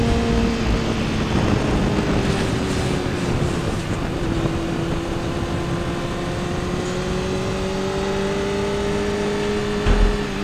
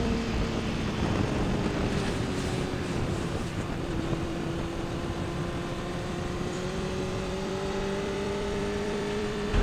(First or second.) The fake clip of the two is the second